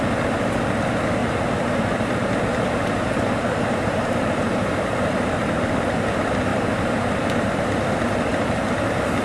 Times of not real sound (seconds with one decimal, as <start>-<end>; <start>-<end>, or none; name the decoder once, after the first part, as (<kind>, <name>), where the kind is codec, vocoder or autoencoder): 1.2-5.6 (vocoder, BigVGAN v2); 6.5-7.7; 8.3-9.2